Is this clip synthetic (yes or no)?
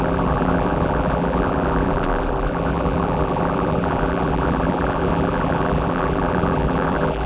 yes